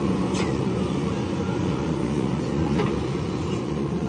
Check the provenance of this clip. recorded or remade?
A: remade